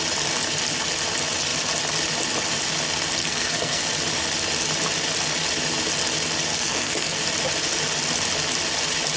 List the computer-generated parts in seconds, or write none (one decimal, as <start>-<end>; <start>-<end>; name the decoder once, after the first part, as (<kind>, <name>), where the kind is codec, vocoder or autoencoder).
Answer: 3.2-3.8 (codec, SNAC); 6.5-7.2